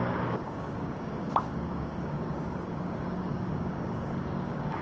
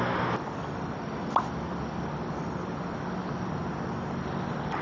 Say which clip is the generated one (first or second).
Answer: first